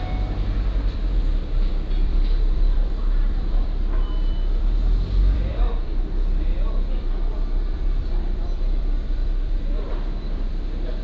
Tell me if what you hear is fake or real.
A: fake